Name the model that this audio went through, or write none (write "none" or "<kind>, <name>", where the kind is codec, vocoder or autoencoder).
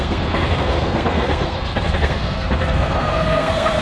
codec, SNAC